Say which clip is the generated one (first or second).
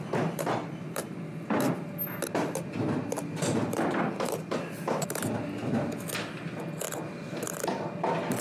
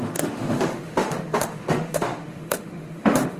second